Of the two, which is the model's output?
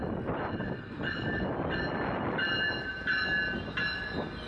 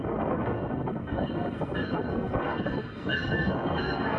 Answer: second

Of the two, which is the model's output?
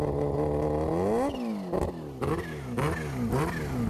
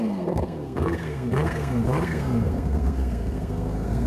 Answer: second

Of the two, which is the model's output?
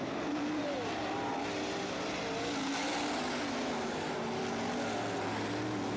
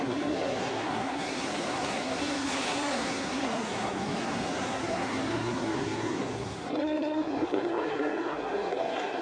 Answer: second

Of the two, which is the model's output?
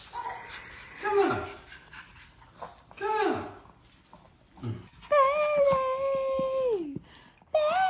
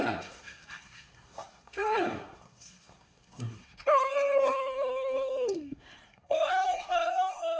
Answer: second